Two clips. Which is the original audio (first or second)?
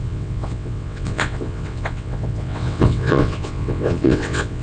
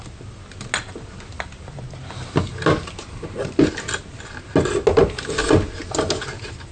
second